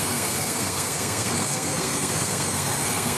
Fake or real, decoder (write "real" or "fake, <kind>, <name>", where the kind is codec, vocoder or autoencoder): fake, codec, SNAC